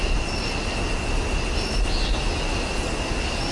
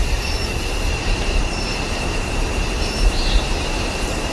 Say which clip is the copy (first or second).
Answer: second